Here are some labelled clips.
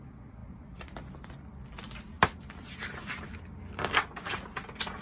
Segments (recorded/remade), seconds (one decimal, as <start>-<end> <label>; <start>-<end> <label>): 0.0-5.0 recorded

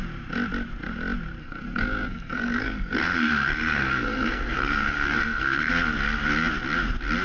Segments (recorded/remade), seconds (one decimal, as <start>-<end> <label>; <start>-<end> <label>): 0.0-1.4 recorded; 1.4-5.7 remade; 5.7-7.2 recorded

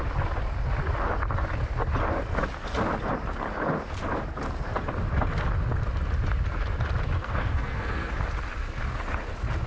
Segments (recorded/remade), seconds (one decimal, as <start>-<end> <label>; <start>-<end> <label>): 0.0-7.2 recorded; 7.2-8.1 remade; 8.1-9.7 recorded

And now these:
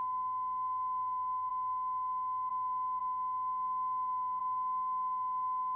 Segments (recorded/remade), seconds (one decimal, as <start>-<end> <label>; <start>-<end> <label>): 0.0-5.8 recorded

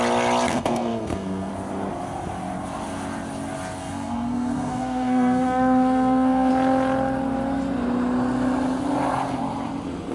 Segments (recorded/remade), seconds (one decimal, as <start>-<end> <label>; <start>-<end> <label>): 0.0-0.5 recorded; 0.5-1.5 remade; 1.5-3.8 recorded; 3.8-6.5 remade; 6.5-10.1 recorded

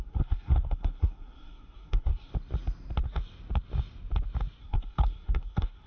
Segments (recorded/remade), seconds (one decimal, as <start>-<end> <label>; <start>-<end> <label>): 0.0-2.3 remade; 2.3-4.6 recorded; 4.6-5.9 remade

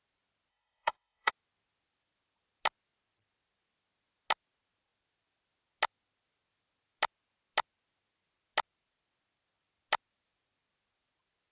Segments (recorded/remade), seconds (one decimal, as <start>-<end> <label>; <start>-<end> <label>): 0.0-0.5 recorded; 0.5-1.3 remade; 1.3-11.5 recorded